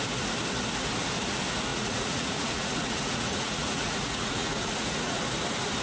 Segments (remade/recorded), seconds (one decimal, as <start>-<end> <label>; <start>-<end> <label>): 0.0-1.7 recorded; 1.7-5.2 remade; 5.2-5.8 recorded